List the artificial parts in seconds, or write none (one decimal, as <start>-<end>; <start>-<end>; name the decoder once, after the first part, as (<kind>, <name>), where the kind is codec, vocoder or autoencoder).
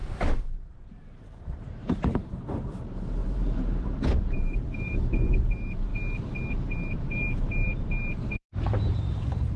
0.0-5.9 (vocoder, BigVGAN v2); 6.5-9.6